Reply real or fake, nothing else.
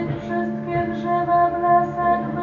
real